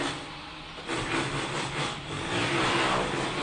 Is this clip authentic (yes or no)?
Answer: yes